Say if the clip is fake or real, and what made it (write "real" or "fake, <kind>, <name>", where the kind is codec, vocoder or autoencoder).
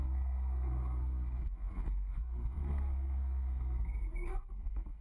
fake, codec, SNAC